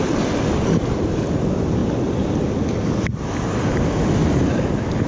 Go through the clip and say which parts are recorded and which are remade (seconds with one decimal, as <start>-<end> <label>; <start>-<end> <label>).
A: 0.0-5.1 recorded